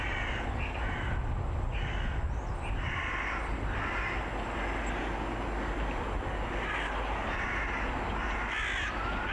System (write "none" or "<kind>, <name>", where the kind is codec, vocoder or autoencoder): none